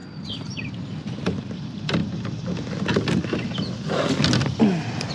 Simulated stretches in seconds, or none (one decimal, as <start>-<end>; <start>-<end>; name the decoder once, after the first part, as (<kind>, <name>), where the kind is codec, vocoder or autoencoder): none